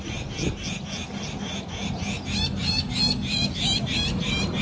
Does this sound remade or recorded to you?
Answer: recorded